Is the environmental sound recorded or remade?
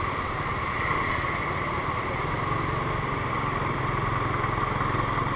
recorded